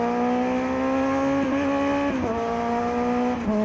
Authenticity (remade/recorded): recorded